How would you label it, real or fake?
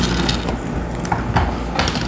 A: real